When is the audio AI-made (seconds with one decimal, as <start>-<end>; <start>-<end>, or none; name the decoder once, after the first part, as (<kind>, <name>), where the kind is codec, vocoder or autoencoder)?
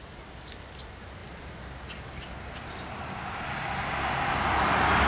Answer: none